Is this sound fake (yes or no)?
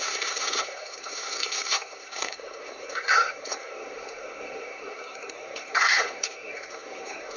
yes